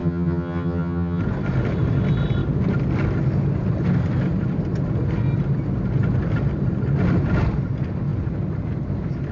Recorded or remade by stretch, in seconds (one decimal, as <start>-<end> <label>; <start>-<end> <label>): 0.0-1.2 remade; 1.2-9.3 recorded